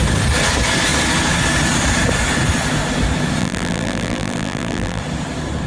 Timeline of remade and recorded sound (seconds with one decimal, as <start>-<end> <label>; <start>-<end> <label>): 0.0-3.4 recorded; 3.4-5.0 remade; 5.0-5.7 recorded